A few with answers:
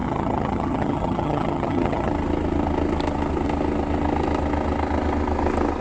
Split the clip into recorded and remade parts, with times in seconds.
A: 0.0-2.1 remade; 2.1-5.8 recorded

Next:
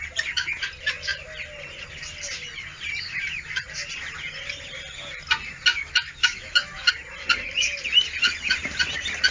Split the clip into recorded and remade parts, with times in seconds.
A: 0.0-5.7 recorded; 5.7-6.9 remade; 6.9-9.3 recorded

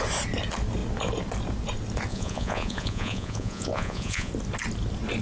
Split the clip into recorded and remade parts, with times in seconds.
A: 0.0-2.1 recorded; 2.1-4.3 remade; 4.3-5.2 recorded

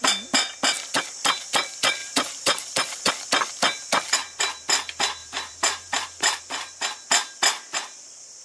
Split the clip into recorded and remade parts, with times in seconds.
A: 0.0-2.0 recorded; 2.0-3.1 remade; 3.1-5.2 recorded; 5.2-6.4 remade; 6.4-8.4 recorded